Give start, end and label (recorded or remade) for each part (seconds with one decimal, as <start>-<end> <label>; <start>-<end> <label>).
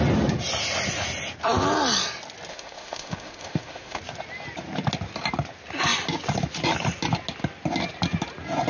0.0-2.5 recorded; 2.5-4.0 remade; 4.0-8.7 recorded